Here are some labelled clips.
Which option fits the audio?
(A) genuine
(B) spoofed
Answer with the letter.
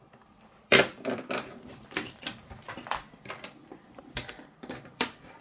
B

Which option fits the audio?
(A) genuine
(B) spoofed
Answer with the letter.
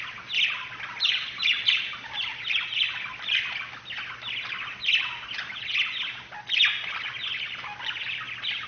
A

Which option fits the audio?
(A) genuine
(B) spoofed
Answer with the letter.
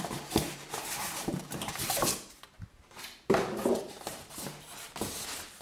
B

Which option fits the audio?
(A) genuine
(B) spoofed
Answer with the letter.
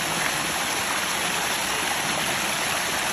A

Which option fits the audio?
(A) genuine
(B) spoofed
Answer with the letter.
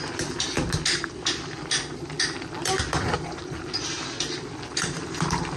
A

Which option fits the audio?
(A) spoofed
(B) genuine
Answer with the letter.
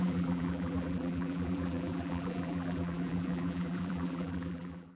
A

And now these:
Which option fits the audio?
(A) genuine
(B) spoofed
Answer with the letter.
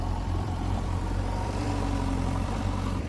B